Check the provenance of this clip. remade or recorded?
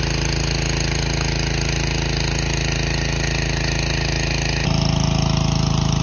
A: recorded